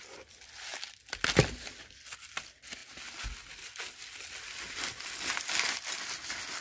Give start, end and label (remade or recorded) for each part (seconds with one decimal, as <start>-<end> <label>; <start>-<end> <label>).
0.0-6.6 recorded